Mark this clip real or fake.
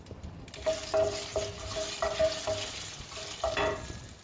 real